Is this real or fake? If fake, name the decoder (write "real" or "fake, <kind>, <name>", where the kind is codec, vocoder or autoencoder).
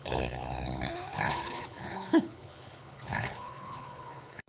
fake, codec, HILCodec